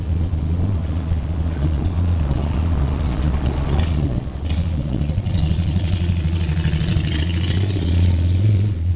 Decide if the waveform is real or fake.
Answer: fake